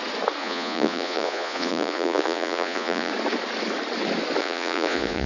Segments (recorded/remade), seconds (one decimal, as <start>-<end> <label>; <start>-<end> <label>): 0.0-0.4 recorded; 0.4-3.1 remade; 3.1-4.4 recorded; 4.4-5.3 remade